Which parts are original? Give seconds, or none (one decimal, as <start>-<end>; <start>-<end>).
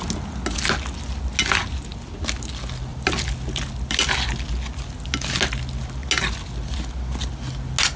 0.0-8.0